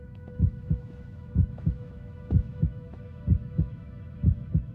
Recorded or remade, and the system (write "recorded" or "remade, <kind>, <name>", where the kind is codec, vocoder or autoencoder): remade, autoencoder, DAC-VAE